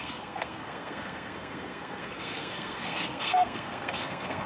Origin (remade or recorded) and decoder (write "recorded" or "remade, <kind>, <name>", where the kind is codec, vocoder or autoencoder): remade, codec, SNAC